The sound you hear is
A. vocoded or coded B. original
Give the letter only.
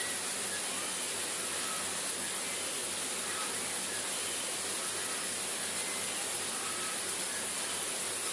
B